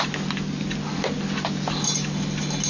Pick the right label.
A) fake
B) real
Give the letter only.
B